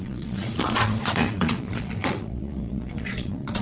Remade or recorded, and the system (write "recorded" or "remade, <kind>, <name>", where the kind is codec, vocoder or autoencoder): remade, vocoder, Vocos